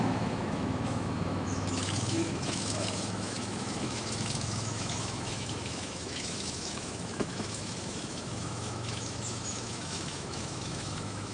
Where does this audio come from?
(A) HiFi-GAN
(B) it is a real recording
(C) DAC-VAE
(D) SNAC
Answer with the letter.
C